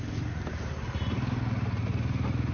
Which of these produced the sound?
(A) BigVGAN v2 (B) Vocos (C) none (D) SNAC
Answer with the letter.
A